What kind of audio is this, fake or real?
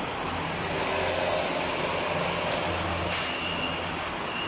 real